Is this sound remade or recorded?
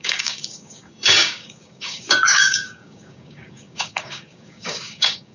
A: remade